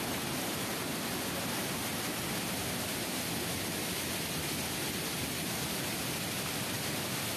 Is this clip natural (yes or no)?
yes